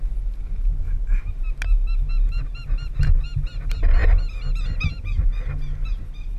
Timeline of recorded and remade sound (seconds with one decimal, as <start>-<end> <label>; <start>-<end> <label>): 0.0-6.4 recorded